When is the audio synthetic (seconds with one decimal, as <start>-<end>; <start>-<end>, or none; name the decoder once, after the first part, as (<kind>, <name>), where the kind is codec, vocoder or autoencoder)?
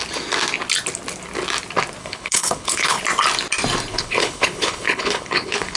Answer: 2.0-3.0 (codec, HILCodec); 3.9-5.8